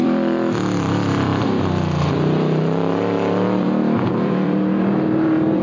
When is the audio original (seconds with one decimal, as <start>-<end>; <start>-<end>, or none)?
none